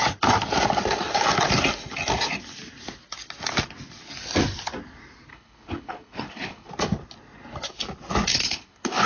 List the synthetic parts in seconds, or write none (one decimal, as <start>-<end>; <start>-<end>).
5.3-6.7; 8.3-9.1